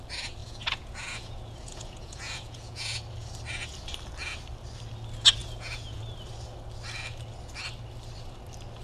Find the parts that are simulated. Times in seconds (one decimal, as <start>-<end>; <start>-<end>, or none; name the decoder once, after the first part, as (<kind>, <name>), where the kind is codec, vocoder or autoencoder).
0.4-3.0 (vocoder, Vocos); 5.4-6.0